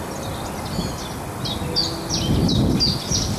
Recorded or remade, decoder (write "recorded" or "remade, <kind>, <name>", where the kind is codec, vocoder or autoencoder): recorded